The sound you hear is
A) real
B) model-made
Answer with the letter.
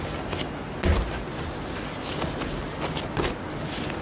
A